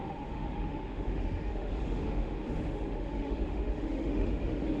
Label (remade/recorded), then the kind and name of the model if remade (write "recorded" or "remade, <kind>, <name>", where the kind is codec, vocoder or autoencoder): remade, autoencoder, DAC-VAE